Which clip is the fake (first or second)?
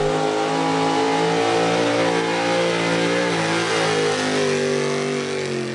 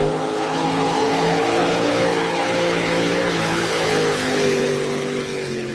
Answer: second